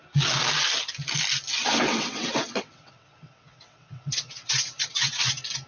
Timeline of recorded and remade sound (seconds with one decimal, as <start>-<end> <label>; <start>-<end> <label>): 0.0-1.9 recorded; 1.9-5.3 remade; 5.3-5.7 recorded